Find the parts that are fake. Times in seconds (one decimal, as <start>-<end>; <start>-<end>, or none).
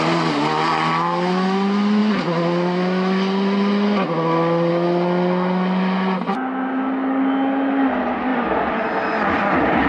none